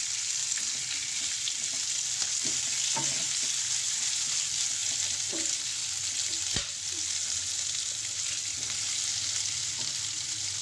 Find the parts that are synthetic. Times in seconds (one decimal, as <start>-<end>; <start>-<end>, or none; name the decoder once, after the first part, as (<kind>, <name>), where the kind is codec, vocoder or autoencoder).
none